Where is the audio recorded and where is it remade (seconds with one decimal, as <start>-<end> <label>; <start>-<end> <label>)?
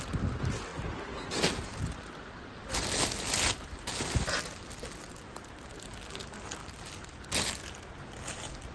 0.0-8.7 recorded